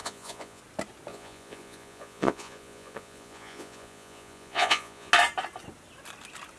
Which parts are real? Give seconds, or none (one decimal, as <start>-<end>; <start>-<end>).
0.6-1.1; 5.1-6.6